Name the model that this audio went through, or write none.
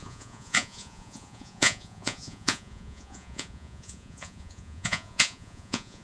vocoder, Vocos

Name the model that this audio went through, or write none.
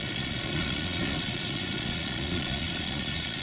vocoder, Vocos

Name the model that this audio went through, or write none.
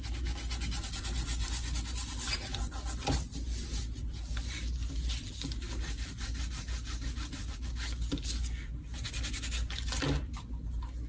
none